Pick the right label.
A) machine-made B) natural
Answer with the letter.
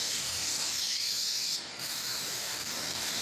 A